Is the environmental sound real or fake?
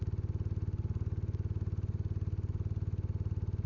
real